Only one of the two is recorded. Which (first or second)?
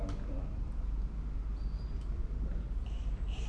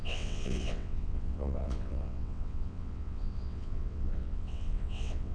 first